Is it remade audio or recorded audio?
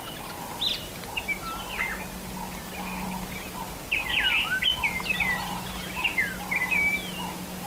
recorded